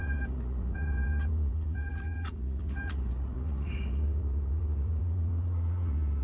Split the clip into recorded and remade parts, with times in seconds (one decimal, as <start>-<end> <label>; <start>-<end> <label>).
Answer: 0.0-6.2 remade